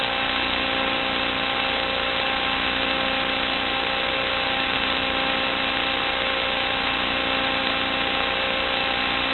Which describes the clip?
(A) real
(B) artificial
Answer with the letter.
A